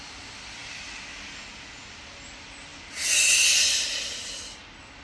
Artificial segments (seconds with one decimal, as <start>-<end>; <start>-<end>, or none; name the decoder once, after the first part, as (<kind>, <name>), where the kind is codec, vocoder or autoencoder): none